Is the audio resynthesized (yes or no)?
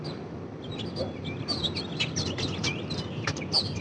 no